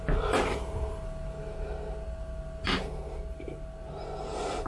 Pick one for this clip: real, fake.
real